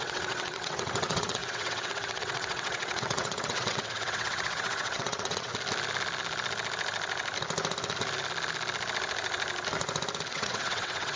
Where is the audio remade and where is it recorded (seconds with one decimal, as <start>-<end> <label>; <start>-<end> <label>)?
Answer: 0.0-5.5 remade; 5.5-10.3 recorded; 10.3-11.2 remade